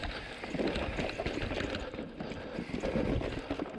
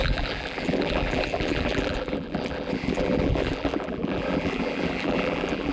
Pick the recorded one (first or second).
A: first